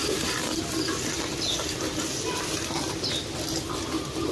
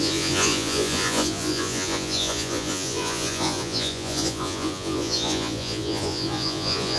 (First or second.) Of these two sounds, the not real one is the second